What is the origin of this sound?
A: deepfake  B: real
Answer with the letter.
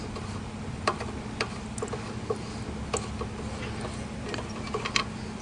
B